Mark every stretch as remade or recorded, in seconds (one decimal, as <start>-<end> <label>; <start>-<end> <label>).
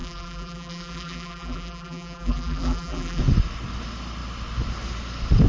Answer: 0.0-3.2 remade; 3.2-5.5 recorded